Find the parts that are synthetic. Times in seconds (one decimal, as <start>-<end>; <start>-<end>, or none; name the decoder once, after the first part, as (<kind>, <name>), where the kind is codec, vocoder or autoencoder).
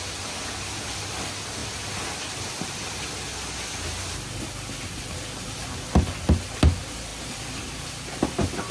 none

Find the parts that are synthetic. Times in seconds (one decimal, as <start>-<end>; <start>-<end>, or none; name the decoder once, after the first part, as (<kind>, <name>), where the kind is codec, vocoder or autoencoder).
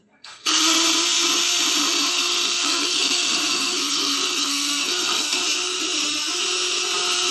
0.0-0.6 (codec, SNAC); 2.1-5.4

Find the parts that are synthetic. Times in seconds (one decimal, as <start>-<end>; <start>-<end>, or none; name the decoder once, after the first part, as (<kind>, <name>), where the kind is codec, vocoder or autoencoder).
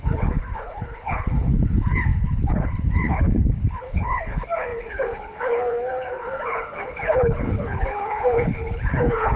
0.0-9.4 (codec, HILCodec)